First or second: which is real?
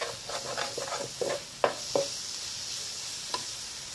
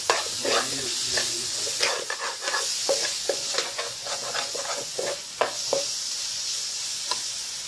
first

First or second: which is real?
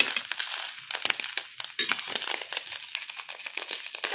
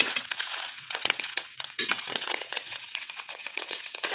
first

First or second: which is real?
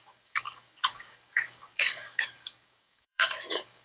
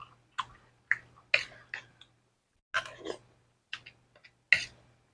second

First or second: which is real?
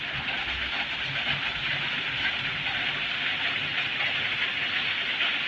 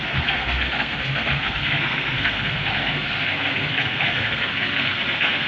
first